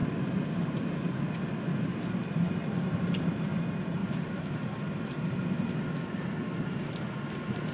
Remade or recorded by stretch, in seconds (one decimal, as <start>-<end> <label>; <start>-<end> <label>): 0.0-1.2 remade; 1.2-1.7 recorded; 1.7-3.6 remade; 3.6-4.0 recorded; 4.0-5.4 remade; 5.4-7.7 recorded